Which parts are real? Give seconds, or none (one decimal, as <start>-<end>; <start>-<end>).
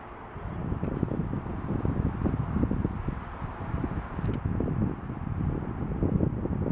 0.0-6.7